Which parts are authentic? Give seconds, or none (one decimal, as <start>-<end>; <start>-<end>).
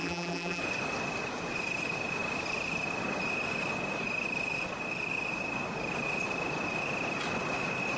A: 0.6-8.0